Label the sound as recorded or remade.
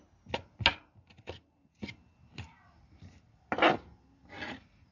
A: recorded